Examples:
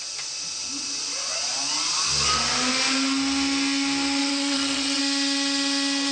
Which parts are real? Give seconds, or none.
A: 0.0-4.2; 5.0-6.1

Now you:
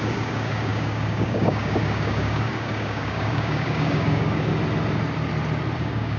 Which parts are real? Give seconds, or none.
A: 4.5-5.8